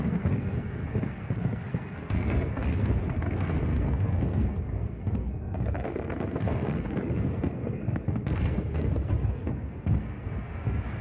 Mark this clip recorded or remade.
remade